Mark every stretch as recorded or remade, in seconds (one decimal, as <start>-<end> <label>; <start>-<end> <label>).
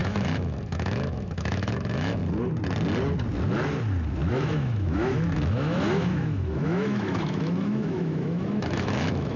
0.0-2.2 remade; 2.2-4.3 recorded; 4.3-9.4 remade